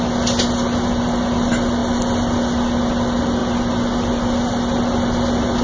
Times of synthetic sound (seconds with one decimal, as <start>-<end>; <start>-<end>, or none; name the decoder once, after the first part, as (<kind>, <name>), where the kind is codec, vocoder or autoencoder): none